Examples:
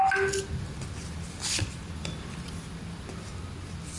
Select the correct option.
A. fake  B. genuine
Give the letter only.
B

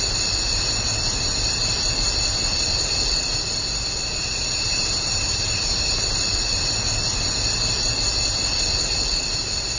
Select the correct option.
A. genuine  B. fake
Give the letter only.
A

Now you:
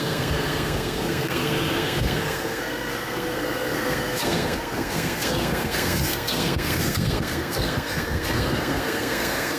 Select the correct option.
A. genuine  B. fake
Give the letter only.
B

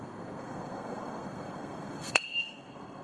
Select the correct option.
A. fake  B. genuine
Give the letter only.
A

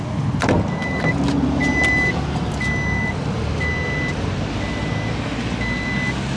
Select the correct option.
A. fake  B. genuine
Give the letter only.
B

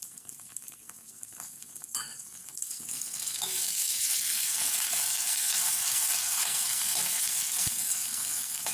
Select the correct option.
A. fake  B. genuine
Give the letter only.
A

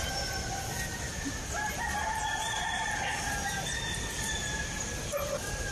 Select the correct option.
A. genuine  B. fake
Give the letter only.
B